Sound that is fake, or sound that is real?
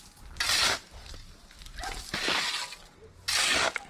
real